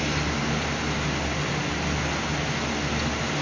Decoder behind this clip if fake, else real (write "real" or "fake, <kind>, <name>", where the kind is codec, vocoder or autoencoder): real